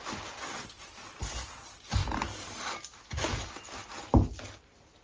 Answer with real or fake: real